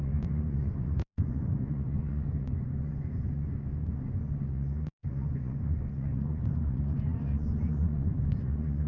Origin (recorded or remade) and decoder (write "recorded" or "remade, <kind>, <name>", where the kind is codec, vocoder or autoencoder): remade, vocoder, Vocos